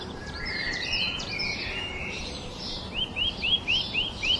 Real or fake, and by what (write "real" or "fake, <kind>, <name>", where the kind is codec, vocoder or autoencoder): fake, vocoder, BigVGAN v2